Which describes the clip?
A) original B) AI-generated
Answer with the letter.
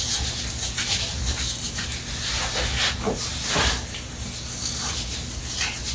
A